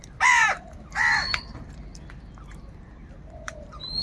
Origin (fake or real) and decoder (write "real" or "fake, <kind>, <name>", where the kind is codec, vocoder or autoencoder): fake, vocoder, BigVGAN v2